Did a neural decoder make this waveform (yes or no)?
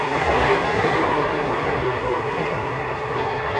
yes